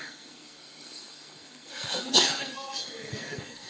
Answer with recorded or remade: remade